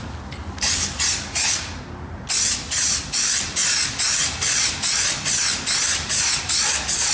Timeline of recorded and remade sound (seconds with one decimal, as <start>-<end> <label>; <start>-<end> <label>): 0.0-7.1 recorded